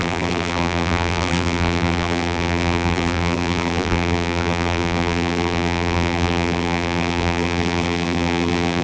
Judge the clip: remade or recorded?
remade